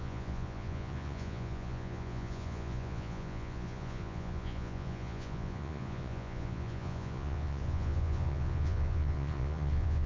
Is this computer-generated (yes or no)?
yes